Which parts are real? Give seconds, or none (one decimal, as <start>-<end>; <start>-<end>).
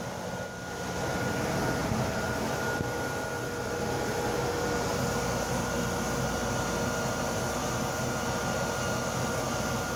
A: 0.0-1.8; 2.7-10.0